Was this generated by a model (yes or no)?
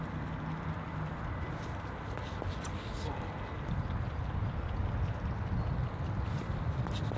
no